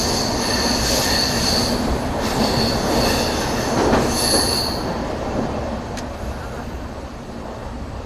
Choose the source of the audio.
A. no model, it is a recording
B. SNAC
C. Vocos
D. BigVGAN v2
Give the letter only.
A